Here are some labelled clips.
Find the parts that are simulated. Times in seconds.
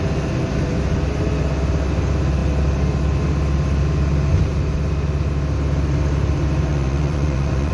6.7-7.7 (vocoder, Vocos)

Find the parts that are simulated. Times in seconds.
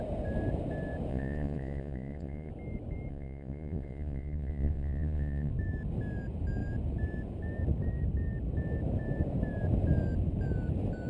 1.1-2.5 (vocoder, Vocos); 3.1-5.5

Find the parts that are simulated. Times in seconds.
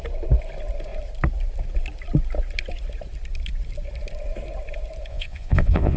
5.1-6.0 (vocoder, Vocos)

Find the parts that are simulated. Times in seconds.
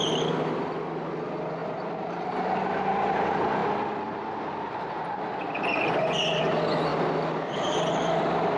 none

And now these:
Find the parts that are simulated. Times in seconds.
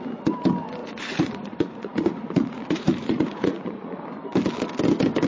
0.8-4.0 (vocoder, Vocos)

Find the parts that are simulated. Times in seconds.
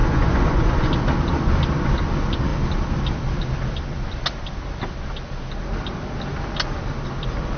0.0-0.9 (vocoder, Vocos)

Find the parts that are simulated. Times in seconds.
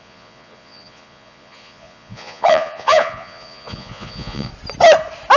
0.0-4.5 (vocoder, Vocos)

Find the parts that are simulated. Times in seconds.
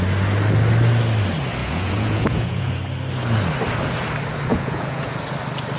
1.6-2.7 (vocoder, Vocos); 4.5-5.2